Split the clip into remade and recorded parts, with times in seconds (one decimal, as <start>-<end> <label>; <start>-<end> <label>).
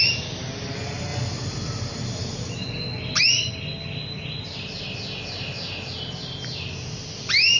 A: 0.0-7.6 recorded